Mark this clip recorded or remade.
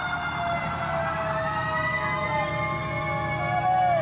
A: recorded